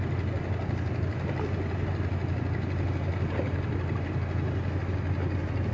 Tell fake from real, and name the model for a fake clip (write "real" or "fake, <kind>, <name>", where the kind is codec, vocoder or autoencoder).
real